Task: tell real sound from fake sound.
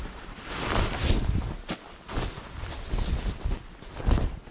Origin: real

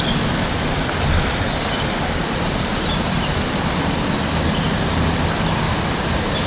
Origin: real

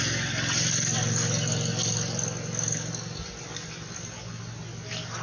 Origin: real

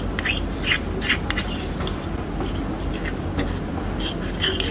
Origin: real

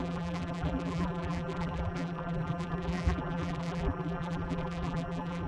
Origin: fake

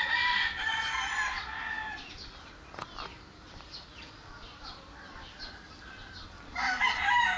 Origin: fake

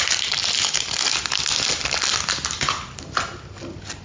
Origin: real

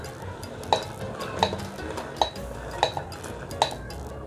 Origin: real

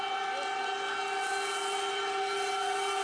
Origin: real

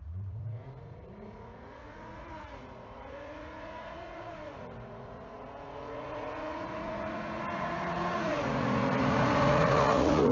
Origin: fake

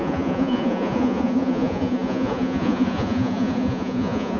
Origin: fake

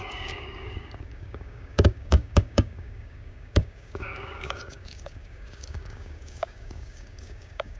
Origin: fake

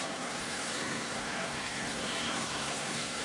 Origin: fake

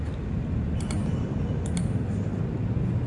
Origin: real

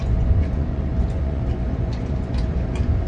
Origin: fake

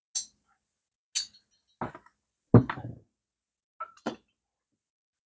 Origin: real